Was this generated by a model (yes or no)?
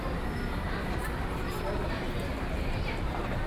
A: no